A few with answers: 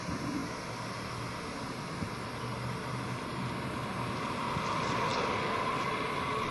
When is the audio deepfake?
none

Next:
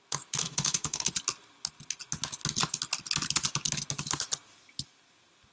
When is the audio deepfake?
0.4-1.1

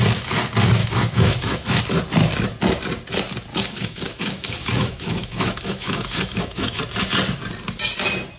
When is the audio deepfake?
0.8-1.8; 3.5-6.8

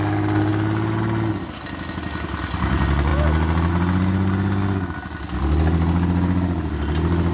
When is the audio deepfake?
none